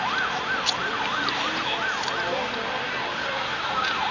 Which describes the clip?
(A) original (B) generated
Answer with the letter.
A